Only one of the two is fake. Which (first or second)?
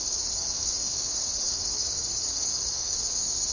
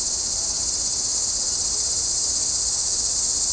first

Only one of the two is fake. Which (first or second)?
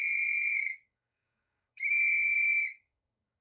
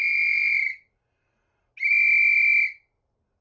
first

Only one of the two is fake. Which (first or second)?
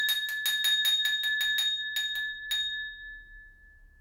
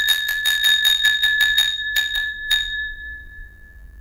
second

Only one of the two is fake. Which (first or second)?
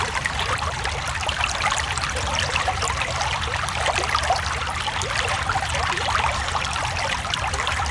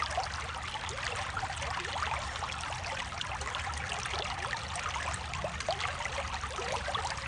first